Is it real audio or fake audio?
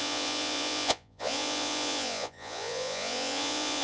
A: fake